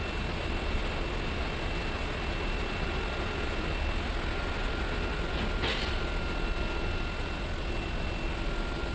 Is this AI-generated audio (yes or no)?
no